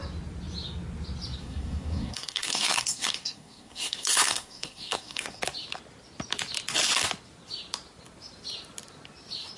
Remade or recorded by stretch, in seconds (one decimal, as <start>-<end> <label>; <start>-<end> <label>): 0.0-1.4 recorded; 1.4-5.4 remade; 5.4-9.6 recorded